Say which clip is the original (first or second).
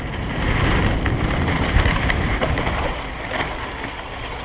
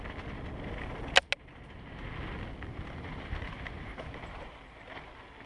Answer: second